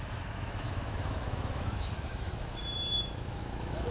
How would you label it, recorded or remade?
remade